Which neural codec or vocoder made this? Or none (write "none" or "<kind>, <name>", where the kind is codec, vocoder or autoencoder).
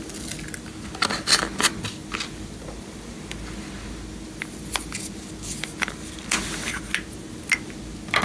none